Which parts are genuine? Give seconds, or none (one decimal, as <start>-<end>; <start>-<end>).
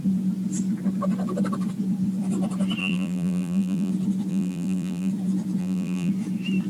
0.0-2.8; 3.9-4.3; 5.1-5.6; 6.1-6.7